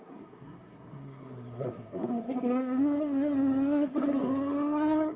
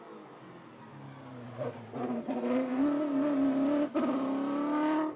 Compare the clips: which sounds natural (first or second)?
second